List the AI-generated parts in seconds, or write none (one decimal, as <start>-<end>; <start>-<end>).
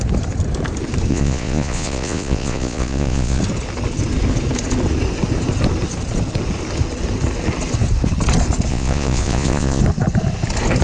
1.1-3.4; 8.7-9.8